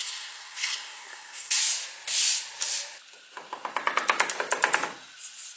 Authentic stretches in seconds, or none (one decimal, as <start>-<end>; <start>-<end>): 1.6-5.6